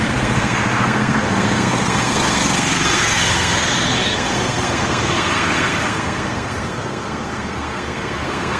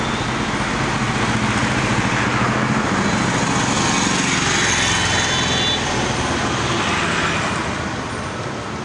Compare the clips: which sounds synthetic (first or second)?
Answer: first